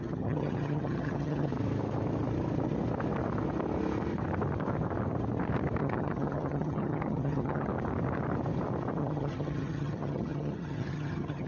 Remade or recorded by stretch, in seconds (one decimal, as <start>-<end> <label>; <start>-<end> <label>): 0.0-1.5 remade; 1.5-5.8 recorded; 5.8-7.7 remade; 7.7-9.0 recorded; 9.0-11.5 remade